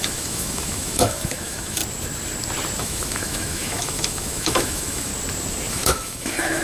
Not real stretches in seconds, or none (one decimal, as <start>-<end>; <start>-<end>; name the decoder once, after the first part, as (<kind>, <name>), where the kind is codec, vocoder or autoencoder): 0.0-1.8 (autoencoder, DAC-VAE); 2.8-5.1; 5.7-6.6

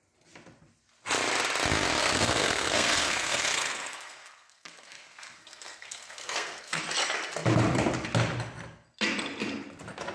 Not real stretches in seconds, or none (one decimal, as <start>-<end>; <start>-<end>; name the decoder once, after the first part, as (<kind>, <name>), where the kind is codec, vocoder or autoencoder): 2.0-6.8 (codec, SNAC)

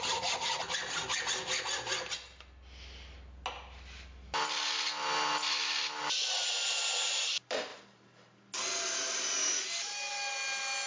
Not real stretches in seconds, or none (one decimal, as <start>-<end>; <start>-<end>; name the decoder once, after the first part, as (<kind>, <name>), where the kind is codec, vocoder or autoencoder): none